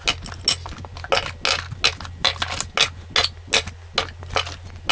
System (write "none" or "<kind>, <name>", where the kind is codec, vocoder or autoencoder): none